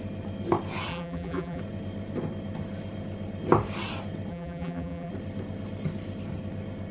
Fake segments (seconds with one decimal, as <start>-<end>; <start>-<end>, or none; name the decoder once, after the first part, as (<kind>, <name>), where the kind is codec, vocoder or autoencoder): 0.9-1.6 (vocoder, BigVGAN v2); 4.3-5.1